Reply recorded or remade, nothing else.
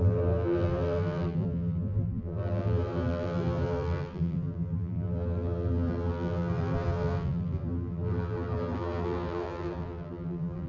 remade